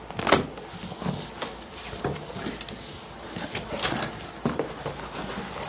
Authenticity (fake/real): real